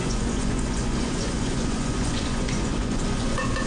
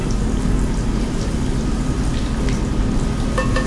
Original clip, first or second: second